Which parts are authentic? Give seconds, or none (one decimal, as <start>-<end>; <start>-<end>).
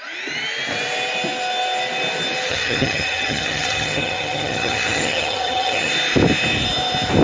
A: 0.0-2.5; 5.9-7.2